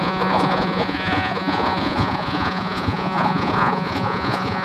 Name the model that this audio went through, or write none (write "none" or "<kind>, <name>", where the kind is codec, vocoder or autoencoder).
vocoder, Vocos